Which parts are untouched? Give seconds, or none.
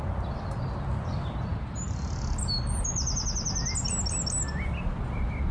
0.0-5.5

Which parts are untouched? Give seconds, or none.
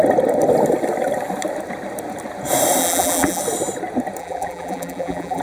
0.0-2.8; 3.4-4.2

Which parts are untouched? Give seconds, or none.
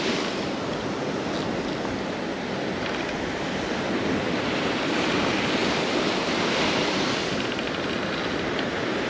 0.0-9.1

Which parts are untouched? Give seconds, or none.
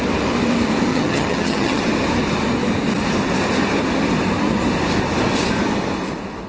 0.0-0.9; 1.8-6.5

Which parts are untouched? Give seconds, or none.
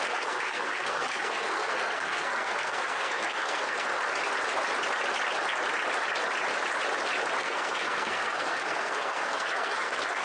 3.9-7.4